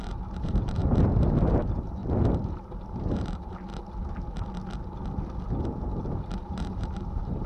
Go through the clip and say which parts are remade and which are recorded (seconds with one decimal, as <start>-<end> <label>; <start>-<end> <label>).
0.0-0.8 remade; 0.8-1.5 recorded; 1.5-2.0 remade; 2.0-3.0 recorded; 3.0-3.7 remade; 3.7-6.0 recorded; 6.0-7.5 remade